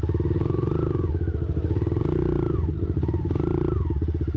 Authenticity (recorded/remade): recorded